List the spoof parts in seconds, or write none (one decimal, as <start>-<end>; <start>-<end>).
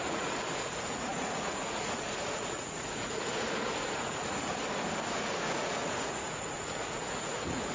0.0-4.6; 5.2-7.7